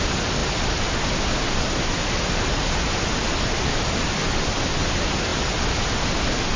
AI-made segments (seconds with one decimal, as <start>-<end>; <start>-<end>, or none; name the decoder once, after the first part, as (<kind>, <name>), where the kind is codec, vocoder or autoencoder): none